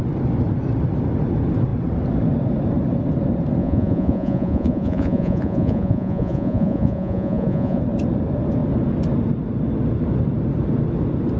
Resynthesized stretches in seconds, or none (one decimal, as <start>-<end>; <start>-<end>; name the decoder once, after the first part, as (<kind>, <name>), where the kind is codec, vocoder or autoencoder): 3.6-7.8 (vocoder, Vocos)